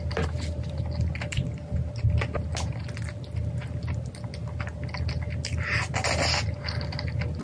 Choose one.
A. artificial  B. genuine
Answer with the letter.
B